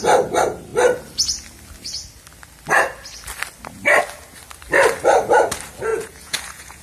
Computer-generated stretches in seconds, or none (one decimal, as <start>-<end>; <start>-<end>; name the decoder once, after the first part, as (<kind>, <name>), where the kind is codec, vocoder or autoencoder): 5.9-6.8 (vocoder, Vocos)